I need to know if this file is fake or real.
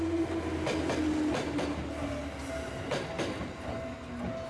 real